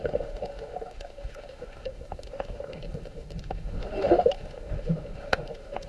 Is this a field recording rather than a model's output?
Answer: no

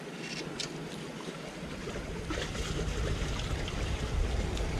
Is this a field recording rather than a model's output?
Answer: yes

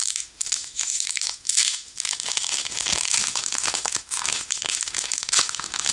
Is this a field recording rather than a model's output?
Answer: no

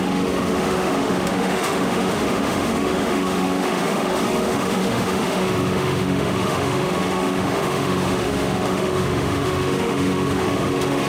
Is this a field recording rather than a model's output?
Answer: no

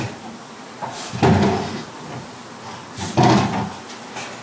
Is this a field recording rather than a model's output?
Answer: yes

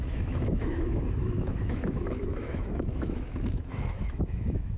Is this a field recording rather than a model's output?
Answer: no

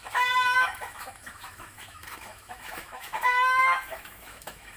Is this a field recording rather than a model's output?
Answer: no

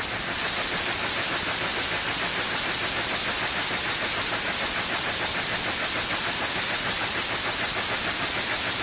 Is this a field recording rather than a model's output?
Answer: yes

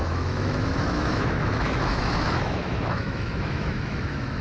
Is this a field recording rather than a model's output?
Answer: no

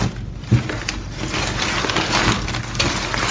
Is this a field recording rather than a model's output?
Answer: yes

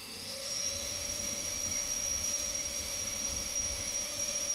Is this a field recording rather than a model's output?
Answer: no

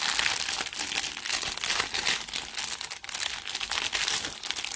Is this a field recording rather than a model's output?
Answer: yes